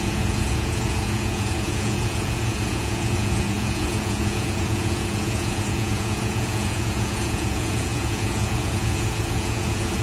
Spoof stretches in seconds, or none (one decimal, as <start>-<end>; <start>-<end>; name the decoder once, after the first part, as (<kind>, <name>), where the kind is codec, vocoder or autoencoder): 0.0-10.0 (vocoder, Vocos)